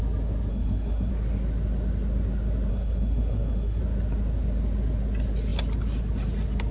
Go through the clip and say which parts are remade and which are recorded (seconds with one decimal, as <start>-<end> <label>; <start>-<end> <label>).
0.0-0.5 recorded; 0.5-1.1 remade; 1.1-2.7 recorded; 2.7-3.8 remade; 3.8-6.7 recorded